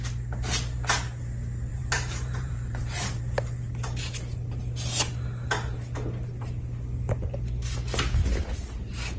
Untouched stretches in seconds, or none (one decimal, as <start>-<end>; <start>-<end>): 0.0-1.7; 3.2-9.2